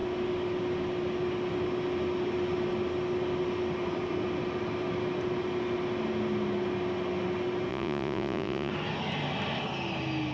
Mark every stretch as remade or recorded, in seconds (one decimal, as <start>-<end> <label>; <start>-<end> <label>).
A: 0.0-7.7 recorded; 7.7-8.7 remade; 8.7-10.3 recorded